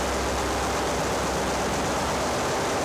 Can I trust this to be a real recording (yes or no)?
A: yes